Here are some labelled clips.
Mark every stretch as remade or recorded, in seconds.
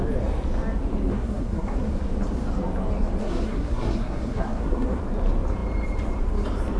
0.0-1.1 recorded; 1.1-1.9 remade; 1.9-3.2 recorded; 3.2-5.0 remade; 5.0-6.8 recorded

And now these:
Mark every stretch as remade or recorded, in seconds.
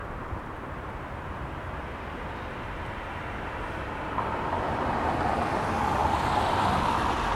0.0-4.2 remade; 4.2-6.0 recorded; 6.0-6.7 remade; 6.7-7.4 recorded